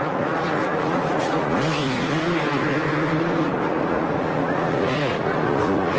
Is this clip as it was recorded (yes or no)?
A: no